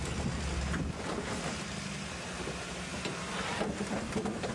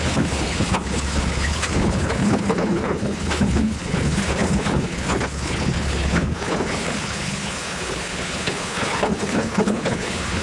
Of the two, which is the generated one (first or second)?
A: second